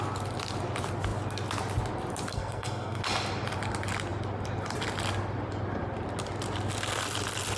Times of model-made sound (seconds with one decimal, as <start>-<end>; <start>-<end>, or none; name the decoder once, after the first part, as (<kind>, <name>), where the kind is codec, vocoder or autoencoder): 2.3-3.0 (codec, SNAC)